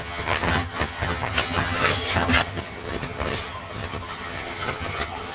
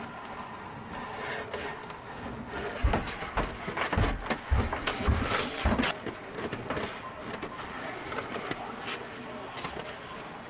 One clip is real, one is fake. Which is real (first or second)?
second